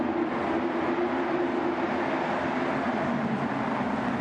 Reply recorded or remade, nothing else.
recorded